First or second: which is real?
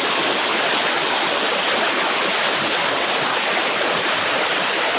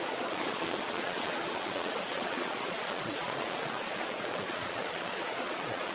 first